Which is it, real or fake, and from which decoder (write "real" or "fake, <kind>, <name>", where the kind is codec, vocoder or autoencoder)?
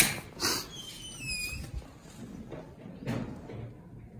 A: real